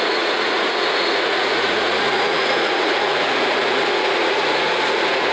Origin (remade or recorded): remade